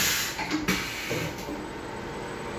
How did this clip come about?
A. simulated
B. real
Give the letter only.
B